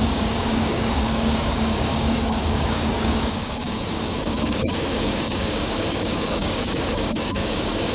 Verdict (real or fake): fake